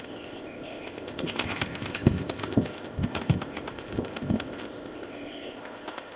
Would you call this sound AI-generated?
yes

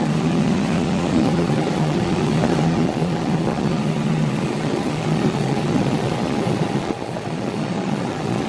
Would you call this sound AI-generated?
yes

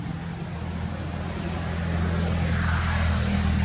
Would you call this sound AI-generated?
no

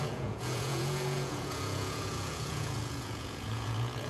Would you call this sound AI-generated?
yes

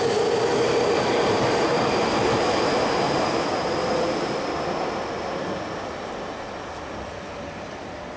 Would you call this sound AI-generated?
no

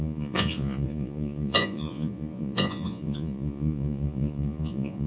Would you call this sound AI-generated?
yes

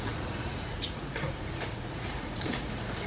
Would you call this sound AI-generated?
yes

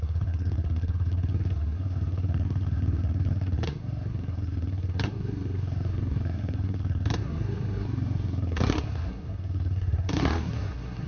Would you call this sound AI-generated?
yes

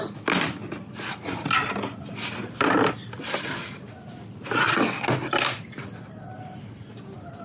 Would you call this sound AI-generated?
no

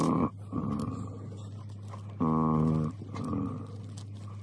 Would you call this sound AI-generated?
no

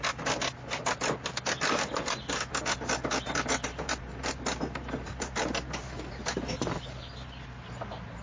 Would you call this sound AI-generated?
no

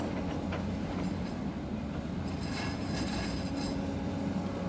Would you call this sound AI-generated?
no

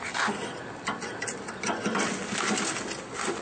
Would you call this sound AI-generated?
no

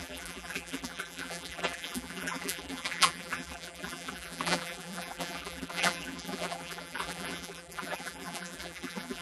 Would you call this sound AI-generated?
yes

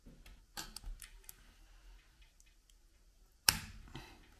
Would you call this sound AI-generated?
no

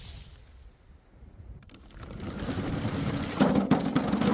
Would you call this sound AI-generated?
yes